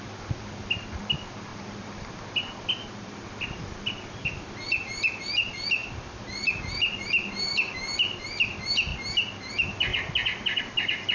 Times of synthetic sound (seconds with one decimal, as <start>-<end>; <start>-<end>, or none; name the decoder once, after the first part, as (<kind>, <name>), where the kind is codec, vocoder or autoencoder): 0.0-8.9 (vocoder, BigVGAN v2); 9.5-9.9; 10.6-11.1